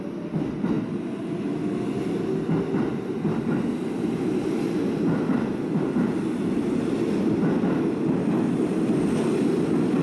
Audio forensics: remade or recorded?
recorded